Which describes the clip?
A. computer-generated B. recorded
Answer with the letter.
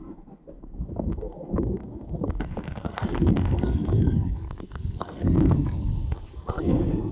A